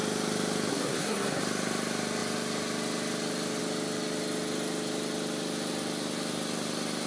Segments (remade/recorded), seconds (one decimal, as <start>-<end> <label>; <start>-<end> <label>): 0.0-0.7 recorded; 0.7-1.4 remade; 1.4-7.1 recorded